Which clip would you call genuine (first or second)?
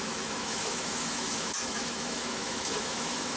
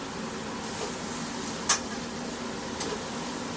second